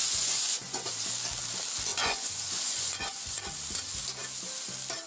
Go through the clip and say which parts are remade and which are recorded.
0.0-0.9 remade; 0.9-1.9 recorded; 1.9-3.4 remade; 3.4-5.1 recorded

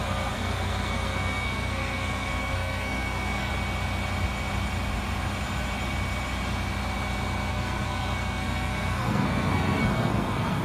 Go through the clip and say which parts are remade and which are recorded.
0.0-3.5 remade; 3.5-7.5 recorded; 7.5-10.6 remade

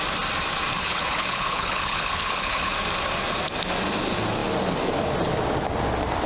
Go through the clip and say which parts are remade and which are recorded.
0.0-0.8 recorded; 0.8-2.7 remade; 2.7-6.3 recorded

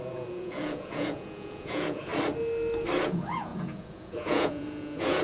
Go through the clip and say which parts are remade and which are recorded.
0.0-2.1 remade; 2.1-3.0 recorded; 3.0-5.2 remade

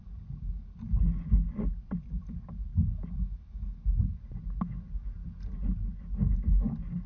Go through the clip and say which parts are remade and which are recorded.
0.0-7.1 recorded

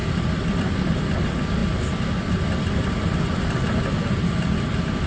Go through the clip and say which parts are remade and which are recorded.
0.0-0.6 remade; 0.6-5.1 recorded